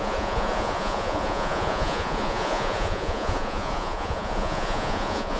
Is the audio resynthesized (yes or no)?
yes